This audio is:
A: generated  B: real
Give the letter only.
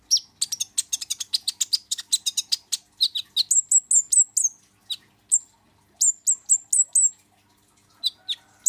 B